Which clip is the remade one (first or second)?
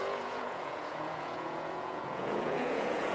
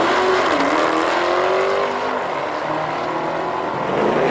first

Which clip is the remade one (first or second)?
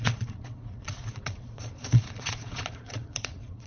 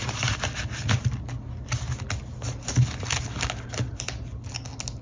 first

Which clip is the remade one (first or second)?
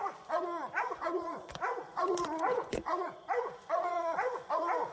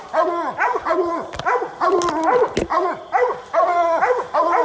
first